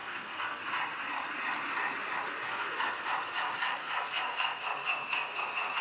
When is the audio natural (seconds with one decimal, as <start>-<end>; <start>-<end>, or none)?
0.6-2.5; 3.1-3.8